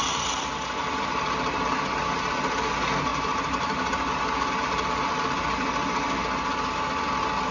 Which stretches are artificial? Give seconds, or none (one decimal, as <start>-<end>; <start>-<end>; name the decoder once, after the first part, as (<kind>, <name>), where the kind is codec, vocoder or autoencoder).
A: 3.1-4.5 (vocoder, BigVGAN v2)